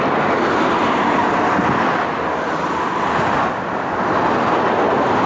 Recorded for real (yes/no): yes